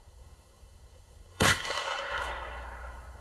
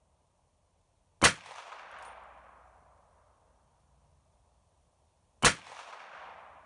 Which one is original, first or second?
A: second